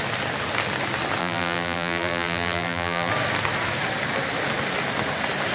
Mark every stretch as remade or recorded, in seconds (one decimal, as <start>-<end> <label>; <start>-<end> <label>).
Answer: 0.0-1.2 recorded; 1.2-3.1 remade; 3.1-5.5 recorded